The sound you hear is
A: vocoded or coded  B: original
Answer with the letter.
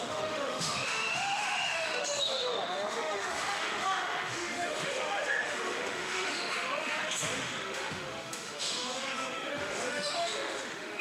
A